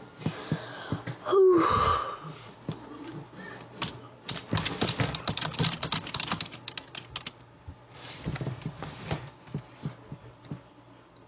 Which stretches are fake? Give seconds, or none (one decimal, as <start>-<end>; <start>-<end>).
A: 1.9-2.6